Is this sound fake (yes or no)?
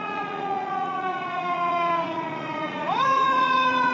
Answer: yes